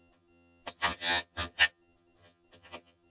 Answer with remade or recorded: remade